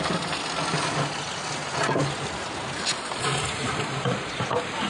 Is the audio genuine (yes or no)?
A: yes